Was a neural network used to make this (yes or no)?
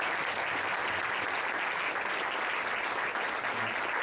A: no